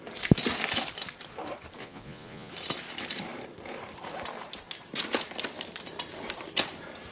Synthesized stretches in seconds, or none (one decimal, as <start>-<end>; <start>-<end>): 1.8-2.5